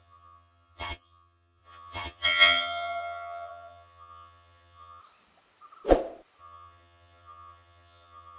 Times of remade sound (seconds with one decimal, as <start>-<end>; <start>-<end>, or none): 0.0-5.0; 6.4-8.4